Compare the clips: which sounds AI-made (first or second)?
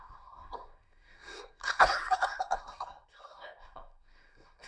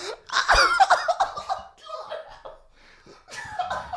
first